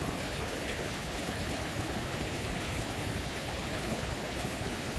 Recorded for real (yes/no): no